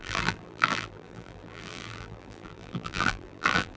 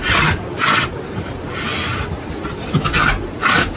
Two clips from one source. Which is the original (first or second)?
second